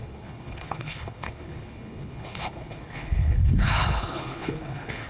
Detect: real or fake fake